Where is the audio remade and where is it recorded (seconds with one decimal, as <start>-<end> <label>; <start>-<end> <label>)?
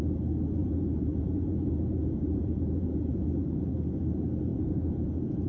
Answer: 0.0-0.6 recorded; 0.6-3.3 remade; 3.3-4.5 recorded; 4.5-5.5 remade